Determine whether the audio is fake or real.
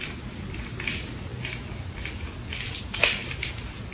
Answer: real